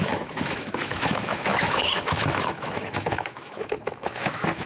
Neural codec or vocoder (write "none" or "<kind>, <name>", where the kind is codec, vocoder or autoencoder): autoencoder, DAC-VAE